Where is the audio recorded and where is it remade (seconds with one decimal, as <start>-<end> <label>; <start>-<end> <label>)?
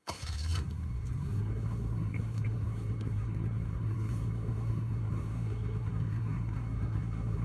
0.0-7.4 remade